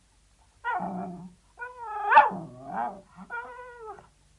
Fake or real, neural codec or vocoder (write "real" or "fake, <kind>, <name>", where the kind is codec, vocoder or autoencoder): real